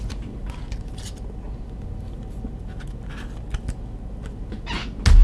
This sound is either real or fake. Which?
real